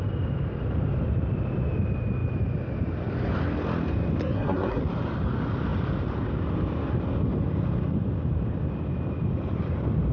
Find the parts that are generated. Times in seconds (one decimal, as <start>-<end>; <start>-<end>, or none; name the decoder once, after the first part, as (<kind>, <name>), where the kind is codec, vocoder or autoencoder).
4.2-4.8 (codec, SNAC)